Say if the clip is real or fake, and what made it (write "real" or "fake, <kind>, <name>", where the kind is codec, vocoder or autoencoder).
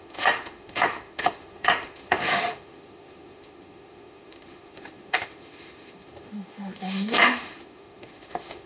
fake, autoencoder, DAC-VAE